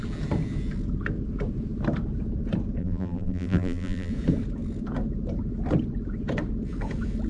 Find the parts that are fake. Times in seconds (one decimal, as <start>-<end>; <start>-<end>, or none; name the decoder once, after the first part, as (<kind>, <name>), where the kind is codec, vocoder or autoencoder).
2.8-4.1 (vocoder, BigVGAN v2)